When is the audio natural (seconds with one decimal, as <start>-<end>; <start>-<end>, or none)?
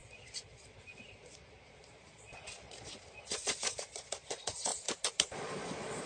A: 4.7-5.3